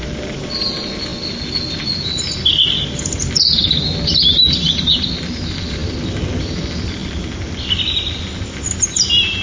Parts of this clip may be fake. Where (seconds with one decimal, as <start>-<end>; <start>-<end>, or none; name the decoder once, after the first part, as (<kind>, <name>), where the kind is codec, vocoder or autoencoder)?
none